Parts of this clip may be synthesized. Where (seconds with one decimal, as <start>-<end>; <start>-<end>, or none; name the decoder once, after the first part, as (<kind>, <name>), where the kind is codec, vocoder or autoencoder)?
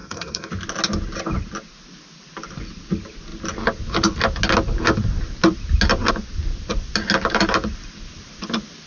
0.0-0.5 (codec, SNAC)